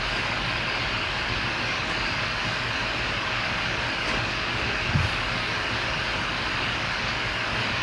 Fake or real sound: fake